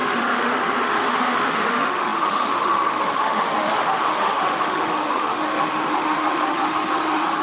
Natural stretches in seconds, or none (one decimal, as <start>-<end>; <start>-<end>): none